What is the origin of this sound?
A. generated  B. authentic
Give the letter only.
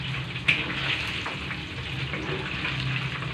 B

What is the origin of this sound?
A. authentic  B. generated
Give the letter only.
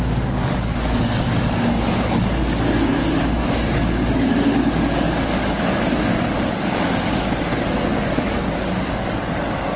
B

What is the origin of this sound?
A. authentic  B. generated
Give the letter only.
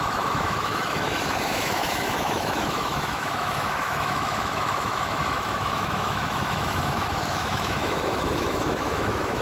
B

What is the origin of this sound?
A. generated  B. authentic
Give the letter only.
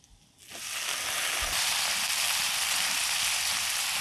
B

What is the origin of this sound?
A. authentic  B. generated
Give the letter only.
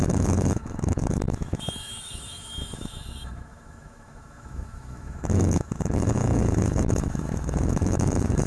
B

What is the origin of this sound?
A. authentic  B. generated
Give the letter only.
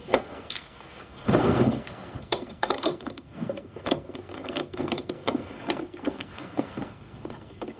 B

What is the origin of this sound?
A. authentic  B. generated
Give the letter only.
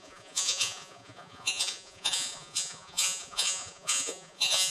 B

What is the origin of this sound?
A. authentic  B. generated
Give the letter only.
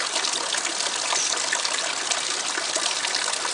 A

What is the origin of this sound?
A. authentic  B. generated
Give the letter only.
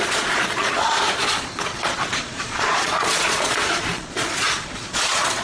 B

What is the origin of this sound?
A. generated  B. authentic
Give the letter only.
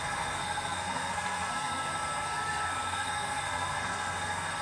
A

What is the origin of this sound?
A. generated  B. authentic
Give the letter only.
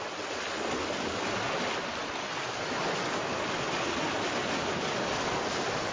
B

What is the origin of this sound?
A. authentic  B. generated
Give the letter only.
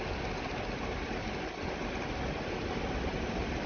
A